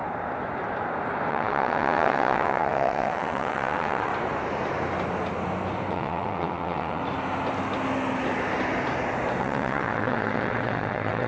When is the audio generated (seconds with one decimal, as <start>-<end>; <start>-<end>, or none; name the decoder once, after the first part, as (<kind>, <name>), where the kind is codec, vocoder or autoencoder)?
1.3-4.1 (vocoder, WaveNeXt); 5.9-7.0; 9.4-11.3